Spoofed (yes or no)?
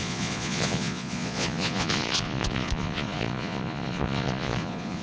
yes